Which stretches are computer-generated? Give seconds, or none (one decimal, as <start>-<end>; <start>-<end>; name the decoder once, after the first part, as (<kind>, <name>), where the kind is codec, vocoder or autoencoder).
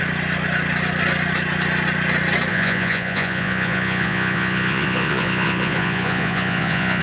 2.5-7.0 (vocoder, Vocos)